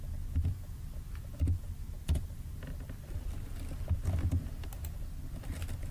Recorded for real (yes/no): yes